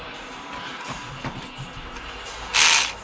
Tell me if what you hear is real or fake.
real